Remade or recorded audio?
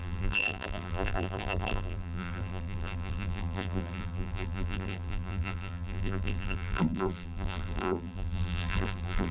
remade